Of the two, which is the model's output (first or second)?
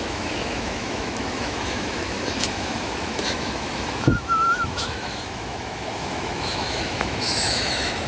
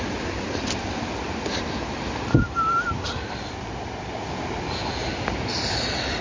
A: first